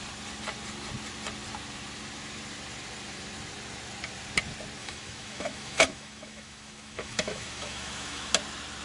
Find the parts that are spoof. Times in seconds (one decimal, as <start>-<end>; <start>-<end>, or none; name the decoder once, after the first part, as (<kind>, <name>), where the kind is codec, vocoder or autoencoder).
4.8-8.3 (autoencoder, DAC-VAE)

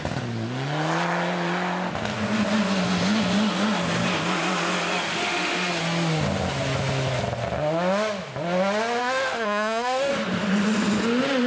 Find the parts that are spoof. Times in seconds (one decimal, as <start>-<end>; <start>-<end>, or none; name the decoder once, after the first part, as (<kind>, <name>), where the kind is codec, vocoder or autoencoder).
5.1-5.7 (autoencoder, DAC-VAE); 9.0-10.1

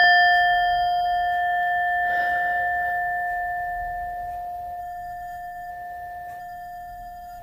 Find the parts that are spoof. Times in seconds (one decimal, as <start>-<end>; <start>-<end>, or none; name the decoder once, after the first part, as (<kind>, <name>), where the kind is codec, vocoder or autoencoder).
4.8-5.7 (autoencoder, DAC-VAE); 6.4-7.4

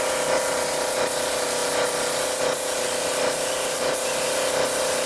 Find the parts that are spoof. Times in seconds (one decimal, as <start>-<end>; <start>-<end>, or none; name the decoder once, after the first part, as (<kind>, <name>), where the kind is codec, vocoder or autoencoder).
none